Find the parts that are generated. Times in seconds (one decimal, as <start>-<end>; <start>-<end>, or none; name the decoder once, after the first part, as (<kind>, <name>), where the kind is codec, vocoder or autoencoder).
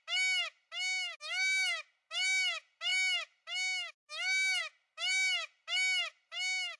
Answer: none